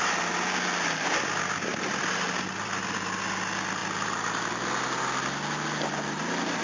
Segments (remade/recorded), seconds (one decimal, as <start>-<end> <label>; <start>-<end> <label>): 0.0-6.6 recorded